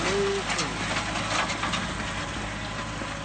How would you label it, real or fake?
real